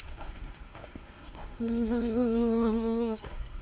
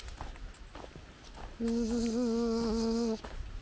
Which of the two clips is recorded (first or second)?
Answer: second